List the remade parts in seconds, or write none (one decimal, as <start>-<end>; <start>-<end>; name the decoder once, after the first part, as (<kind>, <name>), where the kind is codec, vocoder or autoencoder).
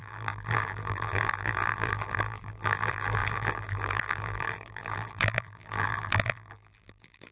0.0-7.3 (vocoder, BigVGAN v2)